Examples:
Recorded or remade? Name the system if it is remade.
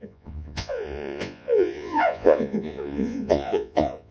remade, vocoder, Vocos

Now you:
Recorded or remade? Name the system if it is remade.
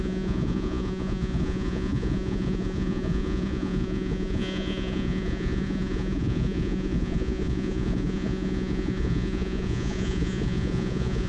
remade, vocoder, Vocos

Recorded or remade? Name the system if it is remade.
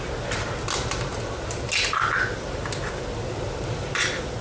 recorded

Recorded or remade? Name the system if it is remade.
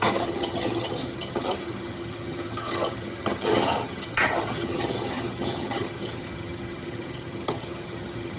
remade, vocoder, HiFi-GAN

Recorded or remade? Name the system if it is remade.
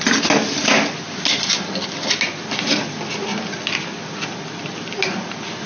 recorded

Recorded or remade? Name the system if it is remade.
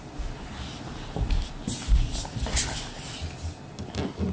recorded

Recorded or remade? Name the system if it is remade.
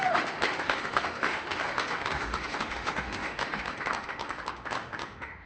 remade, autoencoder, DAC-VAE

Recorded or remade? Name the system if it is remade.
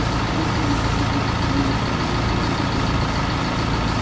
recorded